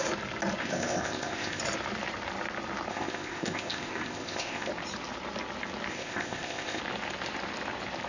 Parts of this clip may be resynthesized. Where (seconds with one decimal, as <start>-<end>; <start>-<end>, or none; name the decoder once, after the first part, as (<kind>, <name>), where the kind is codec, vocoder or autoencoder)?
0.6-1.6 (codec, ZipCodec); 2.9-4.7; 5.9-6.8